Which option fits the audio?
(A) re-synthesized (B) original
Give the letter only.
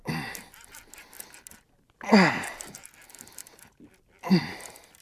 B